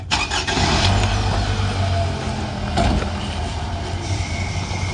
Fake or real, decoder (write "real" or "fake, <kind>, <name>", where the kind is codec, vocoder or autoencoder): real